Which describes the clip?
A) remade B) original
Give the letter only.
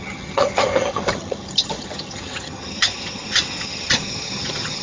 A